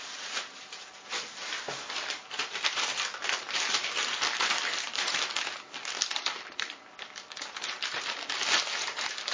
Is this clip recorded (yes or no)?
no